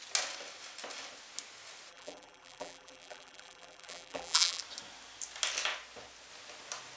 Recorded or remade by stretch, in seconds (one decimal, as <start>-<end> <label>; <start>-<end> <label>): 0.0-1.9 recorded; 1.9-4.6 remade; 4.6-7.0 recorded